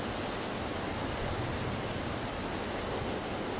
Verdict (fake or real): real